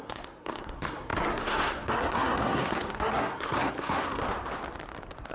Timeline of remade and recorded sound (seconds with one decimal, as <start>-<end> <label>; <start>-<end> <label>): 0.0-4.2 remade; 4.2-5.3 recorded